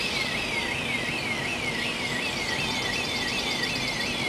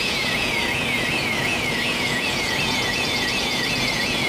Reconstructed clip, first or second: second